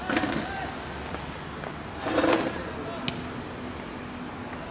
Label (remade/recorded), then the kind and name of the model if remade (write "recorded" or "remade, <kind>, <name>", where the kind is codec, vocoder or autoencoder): recorded